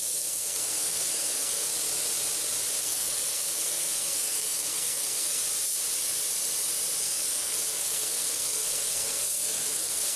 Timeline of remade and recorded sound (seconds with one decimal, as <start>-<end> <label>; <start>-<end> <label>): 0.0-1.7 remade; 1.7-2.8 recorded; 2.8-5.4 remade; 5.4-7.0 recorded; 7.0-10.2 remade